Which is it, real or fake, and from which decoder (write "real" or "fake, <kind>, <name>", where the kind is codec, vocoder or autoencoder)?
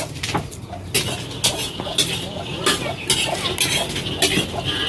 real